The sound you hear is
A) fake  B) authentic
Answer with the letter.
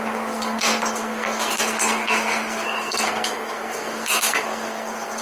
A